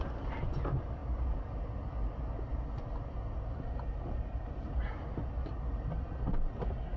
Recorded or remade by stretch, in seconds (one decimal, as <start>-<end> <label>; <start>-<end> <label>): 0.0-7.0 recorded